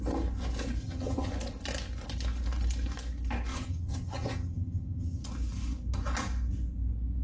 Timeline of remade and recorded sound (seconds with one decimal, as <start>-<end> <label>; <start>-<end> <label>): 0.0-0.8 recorded; 0.8-1.3 remade; 1.3-3.5 recorded; 3.5-5.2 remade; 5.2-7.2 recorded